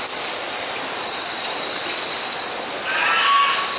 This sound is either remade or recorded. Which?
recorded